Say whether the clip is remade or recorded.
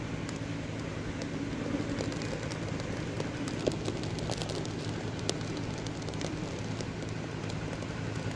recorded